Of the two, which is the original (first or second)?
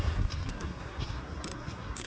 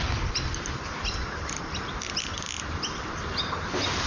second